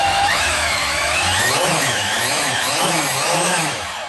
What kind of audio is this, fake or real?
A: fake